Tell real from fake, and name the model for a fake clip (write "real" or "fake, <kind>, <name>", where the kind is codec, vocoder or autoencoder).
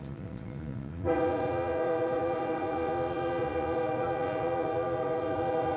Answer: fake, vocoder, Vocos